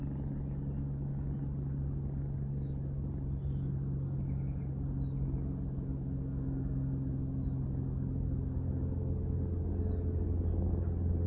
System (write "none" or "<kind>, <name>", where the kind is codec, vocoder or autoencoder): none